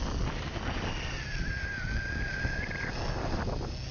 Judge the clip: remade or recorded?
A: recorded